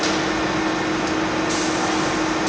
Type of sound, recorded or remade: recorded